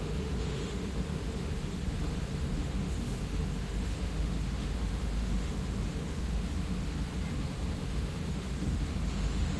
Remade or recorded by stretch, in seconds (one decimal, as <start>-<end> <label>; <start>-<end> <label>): 0.0-7.1 remade; 7.1-7.8 recorded; 7.8-9.6 remade